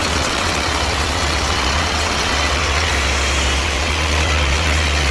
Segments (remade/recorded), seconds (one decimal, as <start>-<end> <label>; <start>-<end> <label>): 0.0-2.9 remade; 2.9-3.6 recorded; 3.6-5.1 remade